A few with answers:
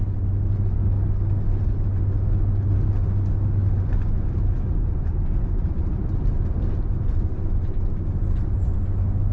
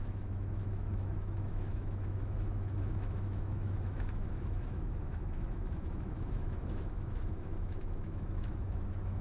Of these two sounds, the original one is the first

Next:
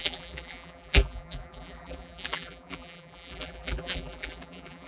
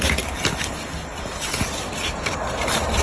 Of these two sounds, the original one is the second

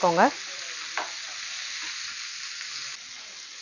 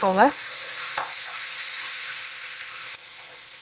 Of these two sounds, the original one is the first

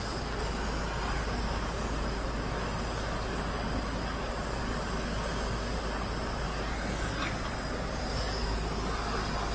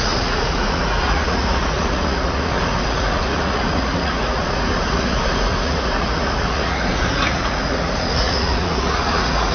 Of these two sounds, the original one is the first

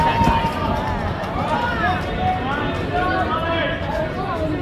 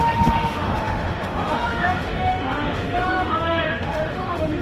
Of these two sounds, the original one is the first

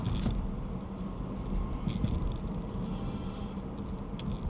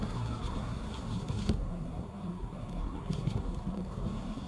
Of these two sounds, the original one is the first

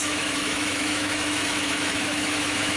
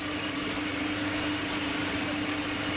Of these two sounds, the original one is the second